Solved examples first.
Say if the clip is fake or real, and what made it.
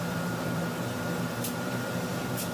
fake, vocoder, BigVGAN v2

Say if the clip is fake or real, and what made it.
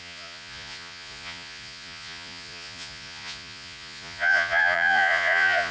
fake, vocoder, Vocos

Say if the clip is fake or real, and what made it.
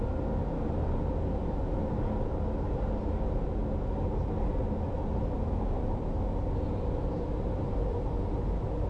real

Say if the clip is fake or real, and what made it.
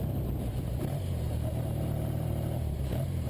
fake, vocoder, BigVGAN v2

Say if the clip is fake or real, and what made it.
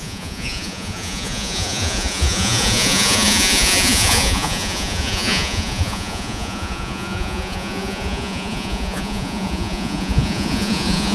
fake, vocoder, Vocos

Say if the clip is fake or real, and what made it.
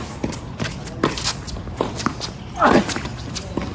real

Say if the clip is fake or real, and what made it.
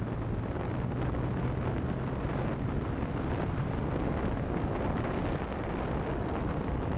real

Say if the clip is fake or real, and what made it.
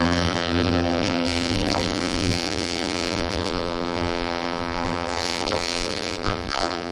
fake, vocoder, BigVGAN v2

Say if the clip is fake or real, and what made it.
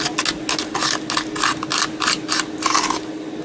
real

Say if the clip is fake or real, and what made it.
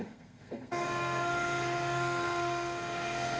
fake, codec, SNAC